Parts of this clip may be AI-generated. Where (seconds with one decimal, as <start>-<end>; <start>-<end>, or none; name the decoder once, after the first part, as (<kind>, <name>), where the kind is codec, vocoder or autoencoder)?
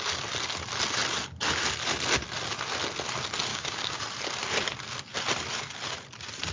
3.5-4.0 (codec, DAC)